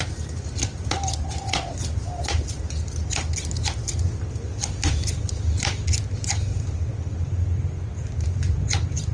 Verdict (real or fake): real